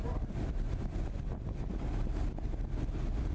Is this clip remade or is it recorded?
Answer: recorded